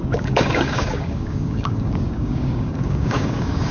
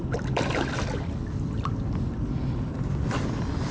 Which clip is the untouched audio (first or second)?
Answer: second